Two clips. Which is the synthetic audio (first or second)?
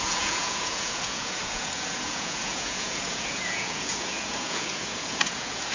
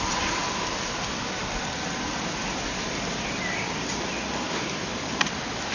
first